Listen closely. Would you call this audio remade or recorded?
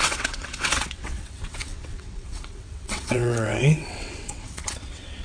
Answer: remade